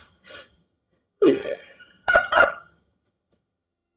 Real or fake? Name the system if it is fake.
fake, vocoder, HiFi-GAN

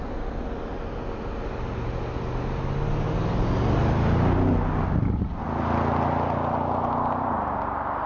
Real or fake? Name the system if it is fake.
real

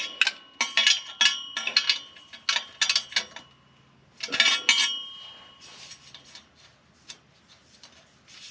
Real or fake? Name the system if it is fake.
real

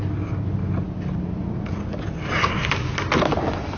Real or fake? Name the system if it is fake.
real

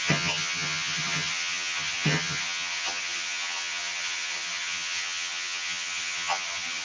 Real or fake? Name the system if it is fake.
fake, vocoder, HiFi-GAN